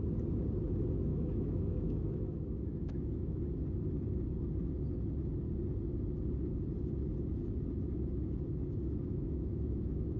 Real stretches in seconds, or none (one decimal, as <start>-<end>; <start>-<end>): 0.0-1.1; 3.4-9.1

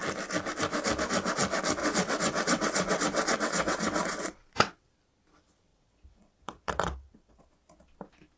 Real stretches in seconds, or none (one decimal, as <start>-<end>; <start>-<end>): 0.0-1.8; 4.9-5.7; 7.4-8.4

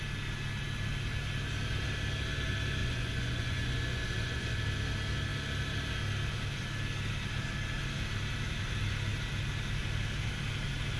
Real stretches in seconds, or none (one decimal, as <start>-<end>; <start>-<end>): 0.0-2.8; 4.6-11.0

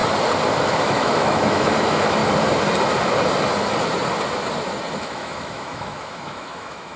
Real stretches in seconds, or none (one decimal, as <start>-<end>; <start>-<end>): 0.0-0.6; 2.2-5.0

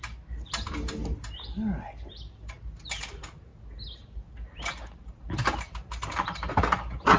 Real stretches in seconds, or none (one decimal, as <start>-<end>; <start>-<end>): 0.0-7.2

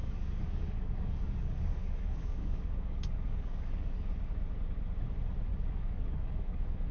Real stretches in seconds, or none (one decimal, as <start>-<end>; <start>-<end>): 4.1-5.5

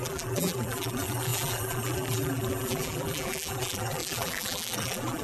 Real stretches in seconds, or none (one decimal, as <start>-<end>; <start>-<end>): none